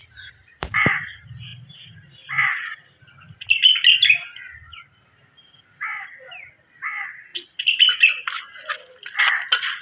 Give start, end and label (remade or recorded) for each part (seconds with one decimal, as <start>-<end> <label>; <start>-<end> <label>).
0.0-1.1 remade; 1.1-9.8 recorded